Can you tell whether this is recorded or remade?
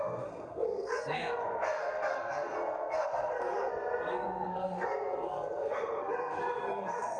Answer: remade